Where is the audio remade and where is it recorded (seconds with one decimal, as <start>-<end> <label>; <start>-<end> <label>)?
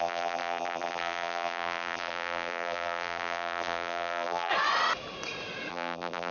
0.0-4.5 remade; 4.5-5.7 recorded; 5.7-6.3 remade